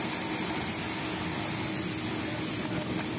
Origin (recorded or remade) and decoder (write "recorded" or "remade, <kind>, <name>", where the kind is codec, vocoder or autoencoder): recorded